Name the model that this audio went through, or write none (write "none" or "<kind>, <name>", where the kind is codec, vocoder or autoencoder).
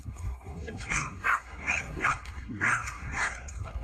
codec, SNAC